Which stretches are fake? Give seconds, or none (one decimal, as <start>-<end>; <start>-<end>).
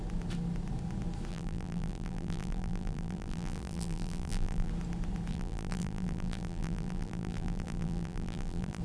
1.3-4.7; 5.3-8.8